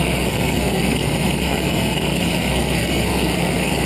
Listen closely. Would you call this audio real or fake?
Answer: fake